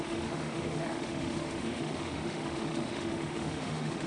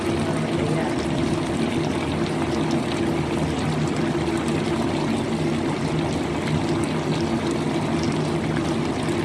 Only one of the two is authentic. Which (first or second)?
second